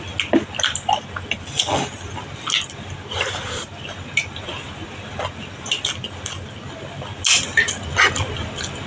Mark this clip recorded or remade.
recorded